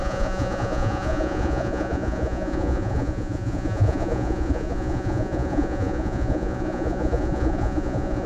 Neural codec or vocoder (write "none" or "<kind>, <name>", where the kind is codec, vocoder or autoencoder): vocoder, Vocos